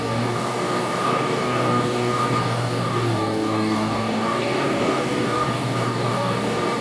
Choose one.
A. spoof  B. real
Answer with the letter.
A